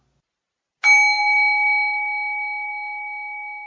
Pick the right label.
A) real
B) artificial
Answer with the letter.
A